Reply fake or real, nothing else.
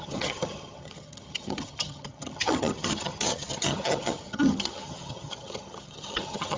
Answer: fake